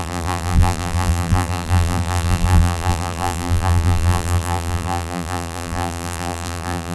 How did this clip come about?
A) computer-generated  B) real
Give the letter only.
A